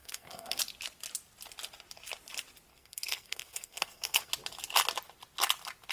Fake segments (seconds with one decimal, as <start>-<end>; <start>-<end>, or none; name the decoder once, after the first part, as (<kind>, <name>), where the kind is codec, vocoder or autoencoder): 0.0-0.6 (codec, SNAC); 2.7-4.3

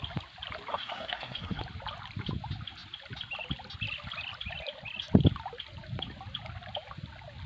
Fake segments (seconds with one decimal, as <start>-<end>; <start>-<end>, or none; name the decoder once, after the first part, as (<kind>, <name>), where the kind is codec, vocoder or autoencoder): 0.7-1.6 (codec, SNAC)

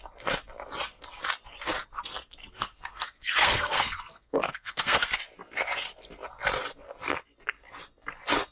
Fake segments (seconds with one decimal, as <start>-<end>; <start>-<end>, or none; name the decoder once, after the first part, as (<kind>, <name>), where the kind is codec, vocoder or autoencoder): 2.4-5.1 (codec, SNAC)